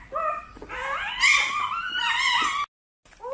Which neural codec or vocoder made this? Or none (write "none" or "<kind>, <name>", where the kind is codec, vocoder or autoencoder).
none